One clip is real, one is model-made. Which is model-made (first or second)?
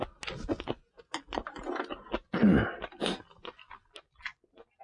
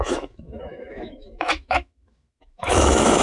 second